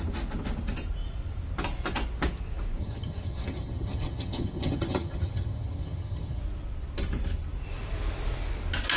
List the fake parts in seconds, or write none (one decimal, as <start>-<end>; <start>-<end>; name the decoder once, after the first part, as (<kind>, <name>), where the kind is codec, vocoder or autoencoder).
2.8-6.4 (vocoder, HiFi-GAN)